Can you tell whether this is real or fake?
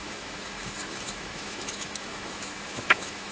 fake